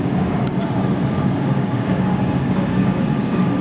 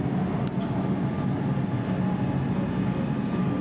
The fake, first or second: first